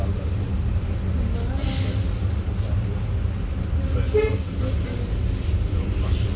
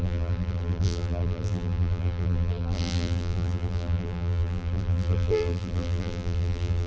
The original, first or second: first